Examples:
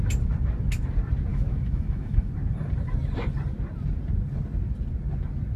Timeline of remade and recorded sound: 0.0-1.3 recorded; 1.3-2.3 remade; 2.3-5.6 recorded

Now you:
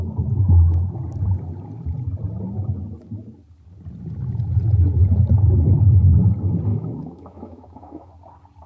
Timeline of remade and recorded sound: 0.0-6.7 recorded; 6.7-8.1 remade; 8.1-8.7 recorded

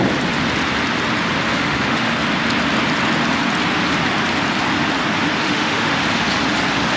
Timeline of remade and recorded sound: 0.0-1.5 recorded; 1.5-2.1 remade; 2.1-5.4 recorded; 5.4-6.0 remade; 6.0-7.0 recorded

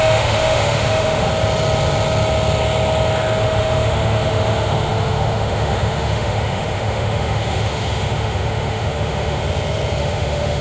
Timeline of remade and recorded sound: 0.0-1.3 remade; 1.3-3.4 recorded; 3.4-9.4 remade; 9.4-10.0 recorded; 10.0-10.6 remade

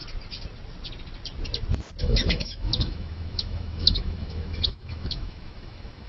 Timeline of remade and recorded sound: 0.0-2.0 recorded; 2.0-6.1 remade

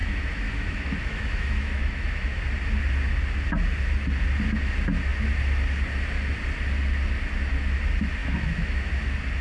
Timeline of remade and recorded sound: 0.0-2.5 remade; 2.5-8.2 recorded; 8.2-8.9 remade; 8.9-9.4 recorded

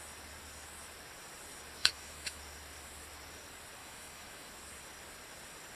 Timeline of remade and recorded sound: 0.0-1.8 recorded; 1.8-2.4 remade; 2.4-3.8 recorded; 3.8-4.5 remade; 4.5-5.8 recorded